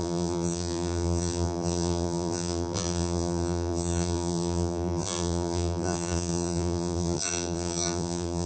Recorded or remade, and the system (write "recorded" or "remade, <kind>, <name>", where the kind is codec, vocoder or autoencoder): remade, vocoder, BigVGAN v2